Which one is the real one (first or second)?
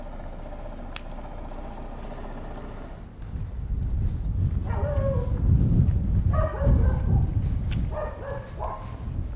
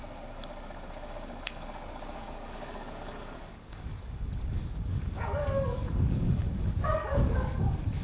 first